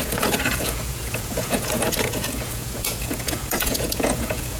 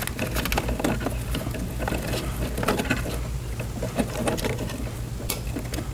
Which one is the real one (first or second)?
second